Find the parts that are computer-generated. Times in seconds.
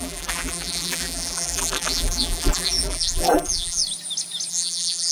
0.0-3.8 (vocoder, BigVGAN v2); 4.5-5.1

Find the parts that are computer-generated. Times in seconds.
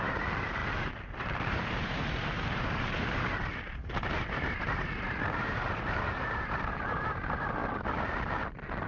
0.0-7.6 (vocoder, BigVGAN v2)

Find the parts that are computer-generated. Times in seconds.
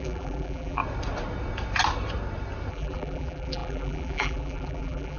0.0-0.8 (vocoder, BigVGAN v2); 2.7-5.2